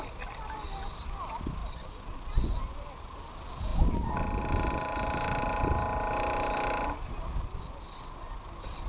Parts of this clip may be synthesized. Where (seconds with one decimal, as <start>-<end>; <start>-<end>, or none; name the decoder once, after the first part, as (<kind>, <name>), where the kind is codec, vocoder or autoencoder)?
none